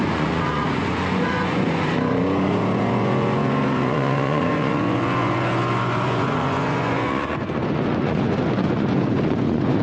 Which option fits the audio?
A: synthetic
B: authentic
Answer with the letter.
A